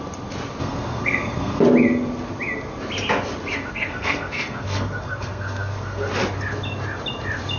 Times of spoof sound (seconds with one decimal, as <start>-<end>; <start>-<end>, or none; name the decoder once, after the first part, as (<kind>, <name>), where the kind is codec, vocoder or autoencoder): 0.6-1.6 (codec, SNAC); 3.7-6.1